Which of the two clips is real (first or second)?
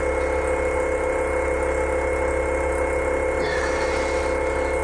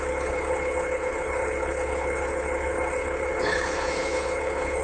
first